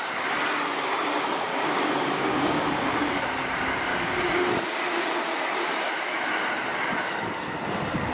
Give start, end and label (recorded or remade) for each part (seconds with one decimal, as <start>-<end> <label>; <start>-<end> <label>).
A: 0.0-1.5 recorded; 1.5-2.5 remade; 2.5-3.9 recorded; 3.9-4.5 remade; 4.5-8.1 recorded